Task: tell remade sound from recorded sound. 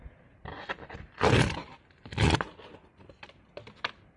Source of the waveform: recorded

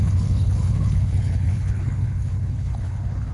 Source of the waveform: remade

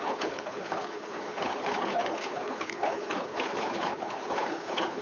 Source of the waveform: remade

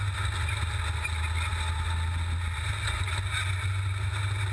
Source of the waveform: recorded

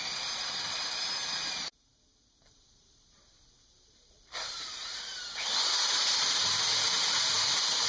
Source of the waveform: recorded